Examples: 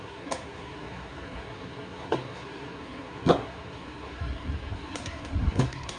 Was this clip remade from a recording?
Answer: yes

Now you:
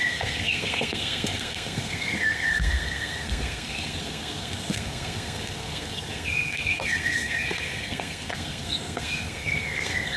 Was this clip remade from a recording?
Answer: yes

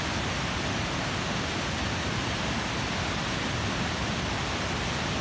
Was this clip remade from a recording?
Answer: no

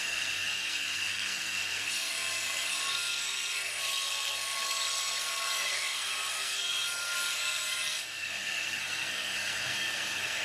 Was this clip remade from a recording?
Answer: yes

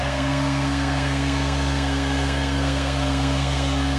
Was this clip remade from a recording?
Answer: yes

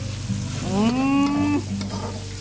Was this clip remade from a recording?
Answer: no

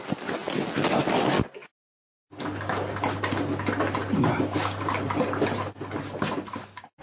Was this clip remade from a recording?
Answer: no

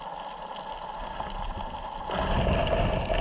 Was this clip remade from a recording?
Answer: no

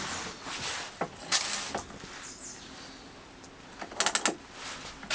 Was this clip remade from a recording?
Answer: no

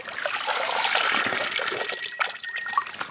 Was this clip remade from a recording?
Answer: no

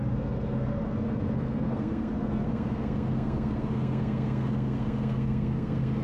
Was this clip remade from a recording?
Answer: yes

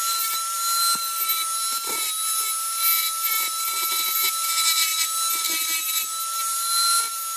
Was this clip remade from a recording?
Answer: no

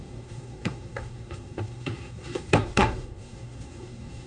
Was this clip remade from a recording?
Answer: yes